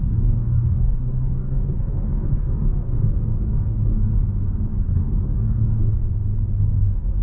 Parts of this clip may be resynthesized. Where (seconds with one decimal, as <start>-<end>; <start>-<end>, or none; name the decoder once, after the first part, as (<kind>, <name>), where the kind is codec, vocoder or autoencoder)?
0.0-4.2 (codec, DAC); 4.8-5.9; 6.6-7.2